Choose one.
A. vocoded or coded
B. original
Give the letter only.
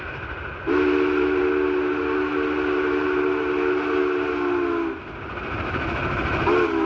B